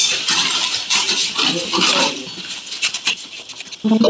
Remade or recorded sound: recorded